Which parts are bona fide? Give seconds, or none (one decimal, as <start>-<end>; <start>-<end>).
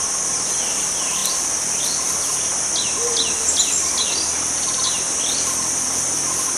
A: 0.0-6.6